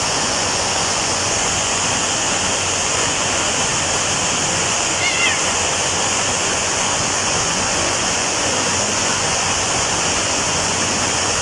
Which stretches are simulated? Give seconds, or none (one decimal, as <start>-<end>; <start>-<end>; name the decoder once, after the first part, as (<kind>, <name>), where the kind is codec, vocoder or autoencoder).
0.0-3.7 (vocoder, Vocos); 4.2-11.4